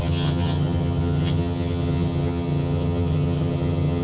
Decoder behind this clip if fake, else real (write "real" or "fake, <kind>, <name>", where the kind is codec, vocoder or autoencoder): fake, vocoder, HiFi-GAN